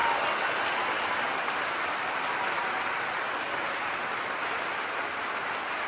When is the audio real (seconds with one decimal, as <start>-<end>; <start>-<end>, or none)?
0.0-5.9